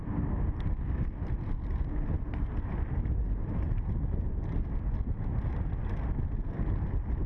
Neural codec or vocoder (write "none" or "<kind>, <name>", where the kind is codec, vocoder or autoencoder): none